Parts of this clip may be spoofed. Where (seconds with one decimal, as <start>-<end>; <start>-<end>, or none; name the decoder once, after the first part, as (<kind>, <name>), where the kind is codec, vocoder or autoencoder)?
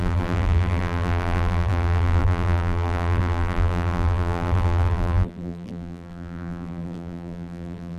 0.0-8.0 (vocoder, BigVGAN v2)